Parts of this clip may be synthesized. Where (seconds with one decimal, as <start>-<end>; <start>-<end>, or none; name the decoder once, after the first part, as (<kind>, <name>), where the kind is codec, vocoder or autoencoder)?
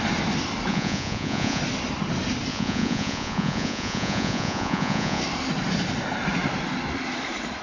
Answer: 0.7-1.6 (vocoder, Vocos); 2.5-5.2